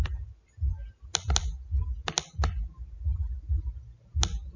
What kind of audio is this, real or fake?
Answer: real